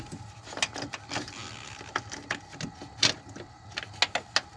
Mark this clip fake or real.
real